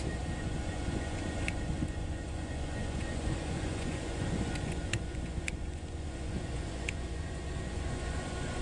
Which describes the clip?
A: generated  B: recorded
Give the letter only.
A